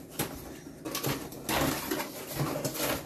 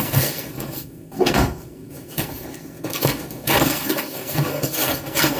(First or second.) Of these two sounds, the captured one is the first